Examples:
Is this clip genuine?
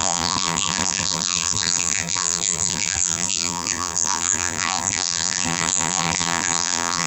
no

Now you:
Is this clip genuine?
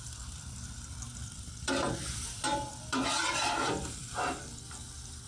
no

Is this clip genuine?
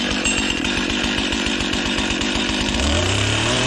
no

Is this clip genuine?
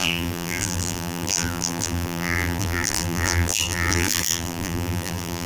no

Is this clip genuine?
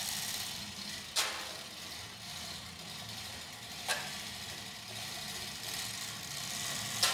yes